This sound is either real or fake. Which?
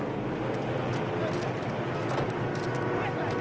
real